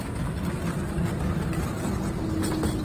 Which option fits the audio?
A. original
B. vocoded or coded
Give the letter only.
A